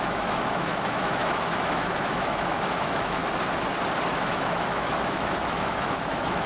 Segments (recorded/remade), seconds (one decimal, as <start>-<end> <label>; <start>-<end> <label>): 0.0-3.2 remade; 3.2-4.2 recorded; 4.2-6.5 remade